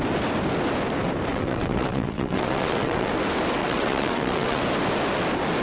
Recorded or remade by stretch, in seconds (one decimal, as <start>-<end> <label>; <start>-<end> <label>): 0.0-1.3 recorded; 1.3-3.1 remade; 3.1-3.6 recorded; 3.6-4.6 remade; 4.6-5.6 recorded